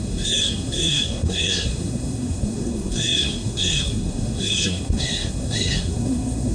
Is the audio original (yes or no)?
no